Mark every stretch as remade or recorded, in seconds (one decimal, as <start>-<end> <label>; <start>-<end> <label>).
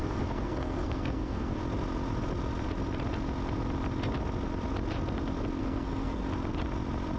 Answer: 0.0-1.6 remade; 1.6-5.6 recorded; 5.6-6.2 remade; 6.2-7.2 recorded